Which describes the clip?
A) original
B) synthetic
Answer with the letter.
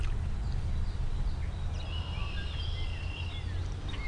A